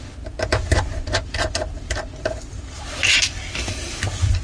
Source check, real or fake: real